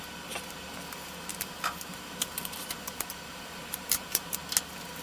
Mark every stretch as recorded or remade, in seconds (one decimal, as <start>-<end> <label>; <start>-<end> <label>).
0.0-1.3 recorded; 1.3-4.3 remade; 4.3-5.0 recorded